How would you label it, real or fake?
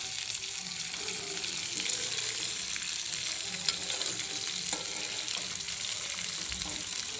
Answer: real